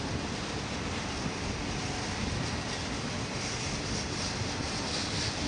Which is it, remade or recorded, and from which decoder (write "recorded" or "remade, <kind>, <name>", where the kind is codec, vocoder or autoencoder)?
recorded